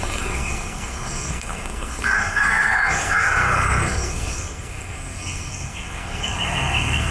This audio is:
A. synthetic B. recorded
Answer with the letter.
A